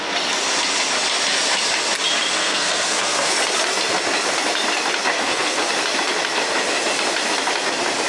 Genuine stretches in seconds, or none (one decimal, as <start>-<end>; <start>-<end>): 0.0-2.4; 3.3-5.1; 5.7-8.1